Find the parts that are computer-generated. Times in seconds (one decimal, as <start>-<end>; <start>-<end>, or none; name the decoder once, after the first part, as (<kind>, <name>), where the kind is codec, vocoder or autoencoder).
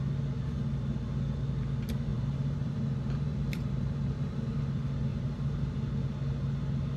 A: 2.1-4.6 (vocoder, BigVGAN v2); 5.1-5.7